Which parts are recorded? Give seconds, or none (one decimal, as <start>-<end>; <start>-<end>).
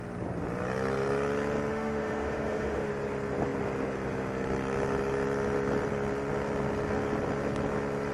0.0-1.7; 2.9-8.1